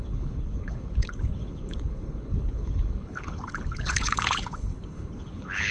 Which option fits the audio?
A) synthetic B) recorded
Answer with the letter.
A